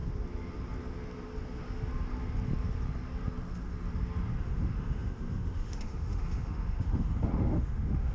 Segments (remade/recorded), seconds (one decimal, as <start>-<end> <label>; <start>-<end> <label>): 0.0-4.4 recorded; 4.4-8.1 remade